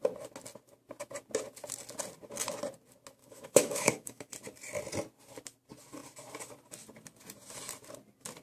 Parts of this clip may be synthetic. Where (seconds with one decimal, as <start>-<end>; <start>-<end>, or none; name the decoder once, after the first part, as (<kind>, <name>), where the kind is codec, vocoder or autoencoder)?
3.2-4.3 (autoencoder, DAC-VAE)